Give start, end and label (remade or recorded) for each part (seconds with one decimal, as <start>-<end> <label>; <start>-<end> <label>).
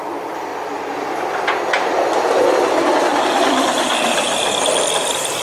0.0-5.4 recorded